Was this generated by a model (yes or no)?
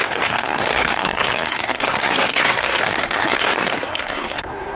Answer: yes